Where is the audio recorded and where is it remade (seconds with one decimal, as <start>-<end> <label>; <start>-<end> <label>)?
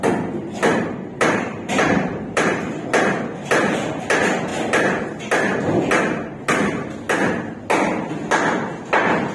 0.0-0.7 recorded; 0.7-2.6 remade; 2.6-9.3 recorded